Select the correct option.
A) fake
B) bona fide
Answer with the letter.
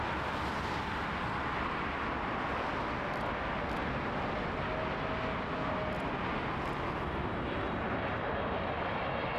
B